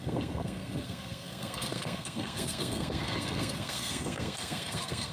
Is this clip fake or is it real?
fake